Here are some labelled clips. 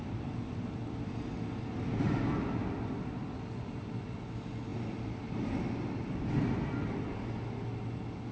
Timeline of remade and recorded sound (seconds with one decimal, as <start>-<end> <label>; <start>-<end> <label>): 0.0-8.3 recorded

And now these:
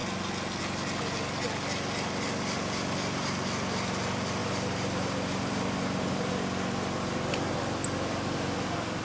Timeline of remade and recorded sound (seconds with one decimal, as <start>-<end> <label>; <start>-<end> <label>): 0.0-4.4 recorded; 4.4-6.3 remade; 6.3-9.0 recorded

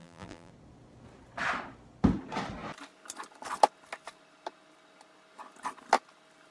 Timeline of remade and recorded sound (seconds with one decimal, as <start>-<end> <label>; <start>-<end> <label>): 0.0-0.5 remade; 0.5-6.5 recorded